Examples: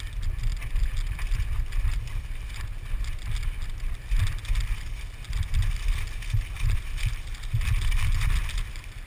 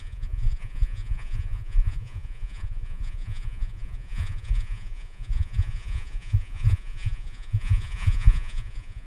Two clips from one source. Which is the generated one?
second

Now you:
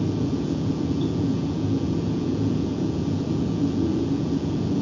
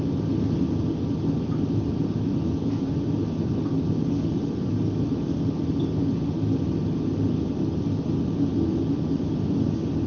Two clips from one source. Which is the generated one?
first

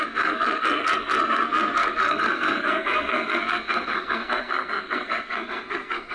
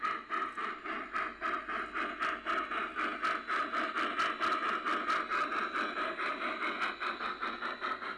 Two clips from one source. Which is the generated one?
first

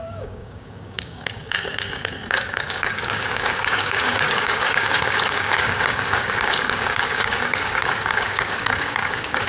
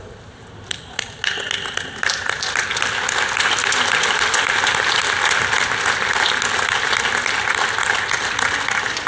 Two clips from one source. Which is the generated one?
first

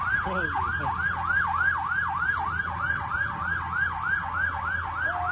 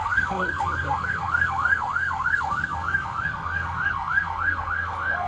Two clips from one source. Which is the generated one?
second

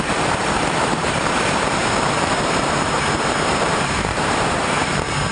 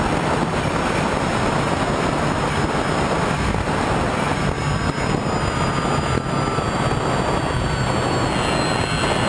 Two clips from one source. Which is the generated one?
first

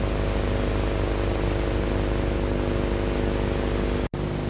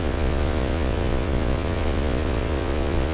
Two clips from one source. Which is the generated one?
second